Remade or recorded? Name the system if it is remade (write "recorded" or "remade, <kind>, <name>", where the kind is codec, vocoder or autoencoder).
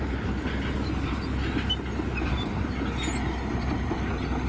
recorded